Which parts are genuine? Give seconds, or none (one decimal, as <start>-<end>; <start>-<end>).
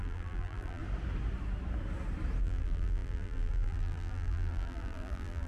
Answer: 0.8-2.4